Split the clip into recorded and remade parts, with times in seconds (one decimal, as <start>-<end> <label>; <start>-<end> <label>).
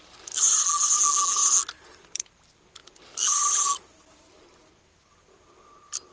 0.0-6.1 recorded